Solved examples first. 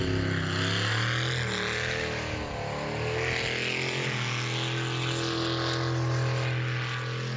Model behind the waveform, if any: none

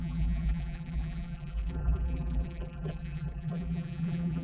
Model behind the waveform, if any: vocoder, BigVGAN v2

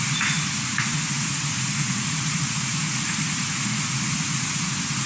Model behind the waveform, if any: vocoder, Vocos